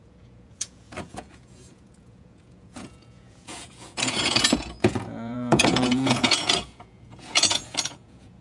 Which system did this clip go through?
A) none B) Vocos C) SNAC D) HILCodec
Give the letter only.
B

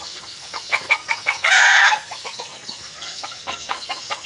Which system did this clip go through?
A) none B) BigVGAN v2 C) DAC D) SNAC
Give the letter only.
D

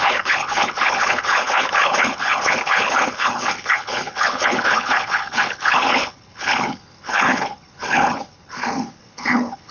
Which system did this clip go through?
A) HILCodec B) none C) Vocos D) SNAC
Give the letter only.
A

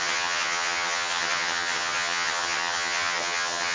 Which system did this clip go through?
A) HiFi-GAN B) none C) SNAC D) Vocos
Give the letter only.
A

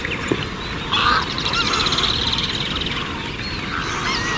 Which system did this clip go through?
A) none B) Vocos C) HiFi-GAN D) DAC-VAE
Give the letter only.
A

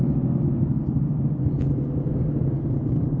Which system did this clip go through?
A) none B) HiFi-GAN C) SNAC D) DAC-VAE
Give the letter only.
A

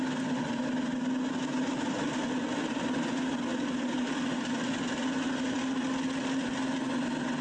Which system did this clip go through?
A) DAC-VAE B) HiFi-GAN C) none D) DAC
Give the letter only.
C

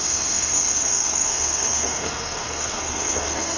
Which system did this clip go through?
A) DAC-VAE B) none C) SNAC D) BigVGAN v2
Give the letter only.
C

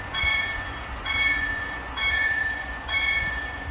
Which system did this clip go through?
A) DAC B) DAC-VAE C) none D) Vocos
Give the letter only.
D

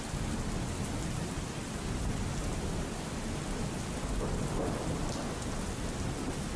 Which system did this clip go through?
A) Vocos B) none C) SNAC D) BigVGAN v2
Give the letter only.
B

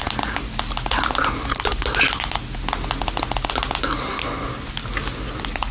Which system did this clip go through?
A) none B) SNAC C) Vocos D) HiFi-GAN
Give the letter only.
A